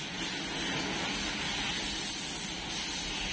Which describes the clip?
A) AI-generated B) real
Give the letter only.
B